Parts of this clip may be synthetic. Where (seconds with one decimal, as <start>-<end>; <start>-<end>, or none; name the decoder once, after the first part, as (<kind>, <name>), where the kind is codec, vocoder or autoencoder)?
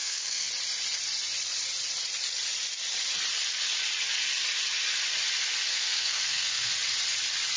0.0-0.5 (codec, SNAC); 5.7-6.7